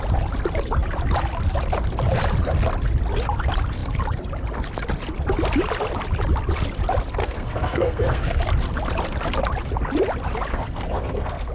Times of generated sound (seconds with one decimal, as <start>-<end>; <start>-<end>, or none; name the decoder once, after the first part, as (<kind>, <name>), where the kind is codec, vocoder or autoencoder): 7.2-8.4 (codec, SNAC); 10.5-11.5